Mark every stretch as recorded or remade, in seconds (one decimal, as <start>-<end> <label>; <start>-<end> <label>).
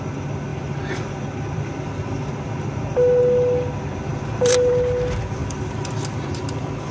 0.0-4.1 recorded; 4.1-4.7 remade; 4.7-5.4 recorded; 5.4-5.9 remade; 5.9-6.9 recorded